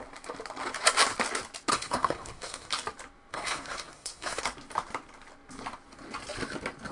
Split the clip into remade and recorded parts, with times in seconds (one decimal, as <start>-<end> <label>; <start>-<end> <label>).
0.0-1.7 recorded; 1.7-2.7 remade; 2.7-3.3 recorded; 3.3-4.4 remade; 4.4-6.9 recorded